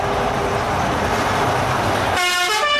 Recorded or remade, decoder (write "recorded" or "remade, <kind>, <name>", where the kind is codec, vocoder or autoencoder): recorded